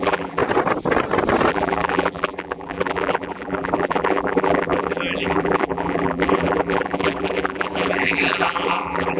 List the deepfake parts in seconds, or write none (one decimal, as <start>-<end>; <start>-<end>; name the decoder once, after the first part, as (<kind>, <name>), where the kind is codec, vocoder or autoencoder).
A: 0.0-0.4 (vocoder, BigVGAN v2); 1.5-9.2